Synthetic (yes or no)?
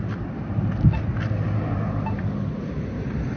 no